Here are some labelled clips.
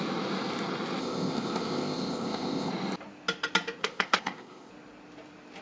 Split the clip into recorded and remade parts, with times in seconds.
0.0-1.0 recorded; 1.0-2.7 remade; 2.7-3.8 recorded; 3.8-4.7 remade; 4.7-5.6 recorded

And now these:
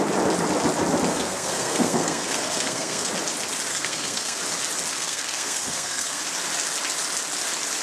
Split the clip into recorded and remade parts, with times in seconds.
0.0-1.1 recorded; 1.1-3.1 remade; 3.1-3.7 recorded; 3.7-4.4 remade; 4.4-4.9 recorded; 4.9-6.2 remade; 6.2-7.8 recorded